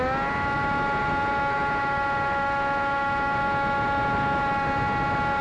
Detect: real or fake real